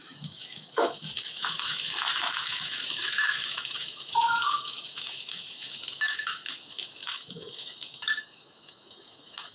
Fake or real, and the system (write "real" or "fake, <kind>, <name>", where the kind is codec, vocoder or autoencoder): fake, autoencoder, DAC-VAE